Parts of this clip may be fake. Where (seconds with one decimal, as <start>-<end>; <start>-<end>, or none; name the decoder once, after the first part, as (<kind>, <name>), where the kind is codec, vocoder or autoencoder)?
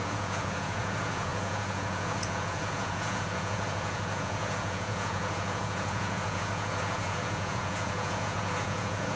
0.0-9.2 (vocoder, Vocos)